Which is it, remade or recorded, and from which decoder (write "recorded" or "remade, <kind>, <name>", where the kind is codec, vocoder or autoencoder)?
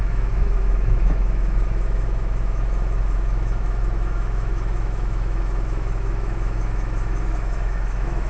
remade, autoencoder, DAC-VAE